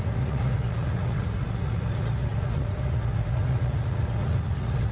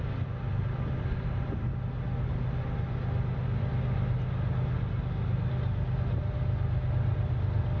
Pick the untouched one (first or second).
second